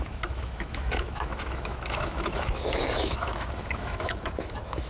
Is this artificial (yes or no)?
yes